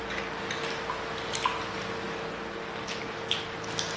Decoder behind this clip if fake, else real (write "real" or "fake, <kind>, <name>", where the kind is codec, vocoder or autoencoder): real